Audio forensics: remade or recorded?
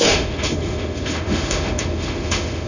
remade